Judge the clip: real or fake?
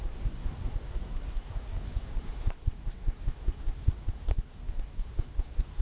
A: fake